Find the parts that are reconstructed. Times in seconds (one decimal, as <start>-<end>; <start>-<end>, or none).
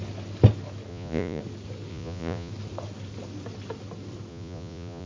0.9-1.4; 1.9-2.5; 4.3-5.1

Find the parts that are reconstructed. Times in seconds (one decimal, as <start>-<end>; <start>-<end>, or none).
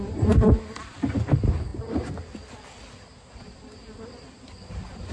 none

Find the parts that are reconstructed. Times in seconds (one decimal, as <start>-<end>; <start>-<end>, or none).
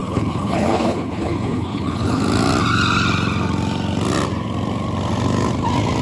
0.0-2.2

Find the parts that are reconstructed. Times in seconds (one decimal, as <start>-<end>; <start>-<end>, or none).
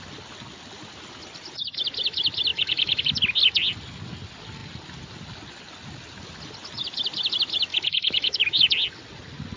2.5-3.0; 7.7-8.7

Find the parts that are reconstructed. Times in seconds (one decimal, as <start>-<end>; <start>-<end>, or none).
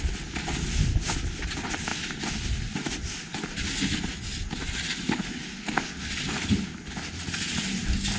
none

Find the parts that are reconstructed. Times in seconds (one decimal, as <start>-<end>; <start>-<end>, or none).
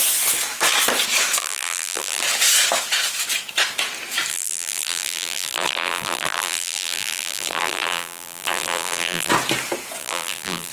1.4-2.2; 4.3-9.3; 10.0-10.7